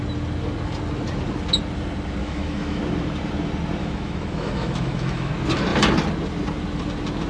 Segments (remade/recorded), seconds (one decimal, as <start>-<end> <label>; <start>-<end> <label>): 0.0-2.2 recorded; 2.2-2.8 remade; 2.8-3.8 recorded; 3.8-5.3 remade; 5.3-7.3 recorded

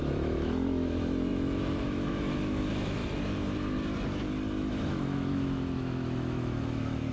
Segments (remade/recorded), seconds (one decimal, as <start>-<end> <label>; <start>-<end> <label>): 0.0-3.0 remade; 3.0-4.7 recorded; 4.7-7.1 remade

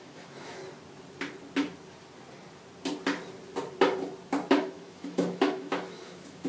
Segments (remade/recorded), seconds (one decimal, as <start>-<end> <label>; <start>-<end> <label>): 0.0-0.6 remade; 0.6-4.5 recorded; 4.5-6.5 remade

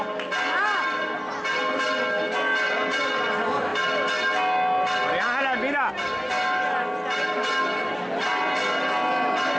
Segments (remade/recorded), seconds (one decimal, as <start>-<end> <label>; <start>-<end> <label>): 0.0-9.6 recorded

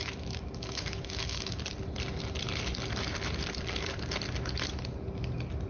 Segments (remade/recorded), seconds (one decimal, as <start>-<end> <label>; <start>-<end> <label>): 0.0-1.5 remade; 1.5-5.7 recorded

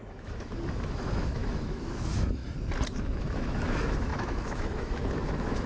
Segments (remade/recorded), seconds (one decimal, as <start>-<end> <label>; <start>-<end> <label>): 0.0-2.4 remade; 2.4-3.2 recorded; 3.2-5.7 remade

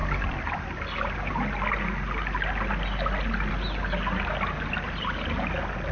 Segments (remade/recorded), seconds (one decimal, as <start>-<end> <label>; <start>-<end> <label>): 0.0-5.9 recorded